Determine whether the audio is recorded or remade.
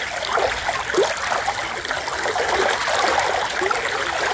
recorded